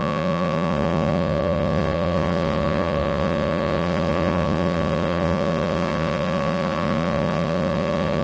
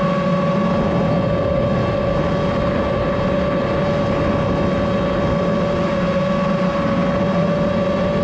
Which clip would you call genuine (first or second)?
second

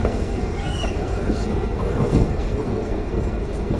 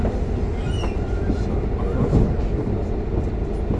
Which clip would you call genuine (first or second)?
second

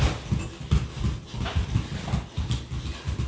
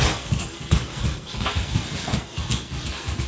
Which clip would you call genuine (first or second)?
first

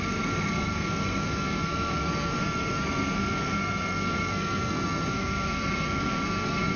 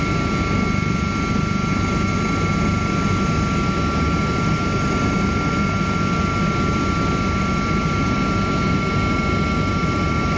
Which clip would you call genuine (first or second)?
second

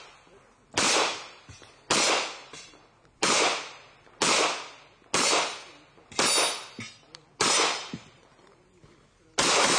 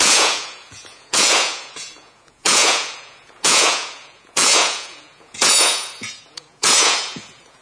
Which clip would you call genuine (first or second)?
first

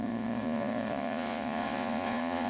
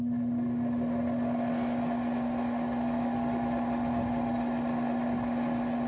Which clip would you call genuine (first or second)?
second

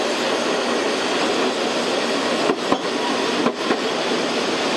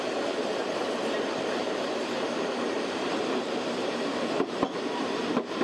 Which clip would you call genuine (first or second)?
first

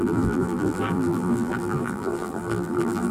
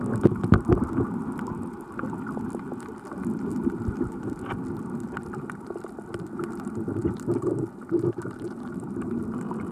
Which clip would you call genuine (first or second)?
second